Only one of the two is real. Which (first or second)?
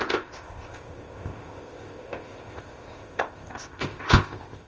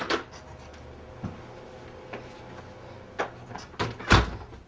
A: second